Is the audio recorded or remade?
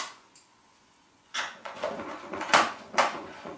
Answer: remade